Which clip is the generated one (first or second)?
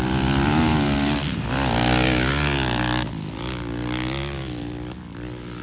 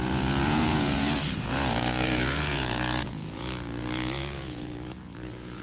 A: second